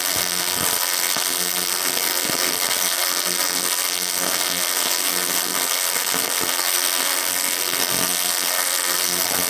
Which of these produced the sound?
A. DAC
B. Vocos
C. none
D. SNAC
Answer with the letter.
D